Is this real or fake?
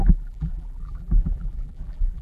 fake